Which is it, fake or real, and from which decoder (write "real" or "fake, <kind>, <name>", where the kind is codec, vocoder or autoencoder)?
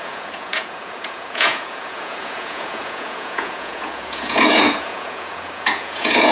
fake, vocoder, Vocos